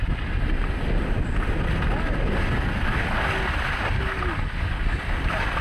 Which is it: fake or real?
real